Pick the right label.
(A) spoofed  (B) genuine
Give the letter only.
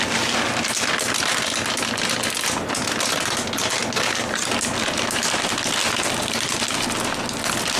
B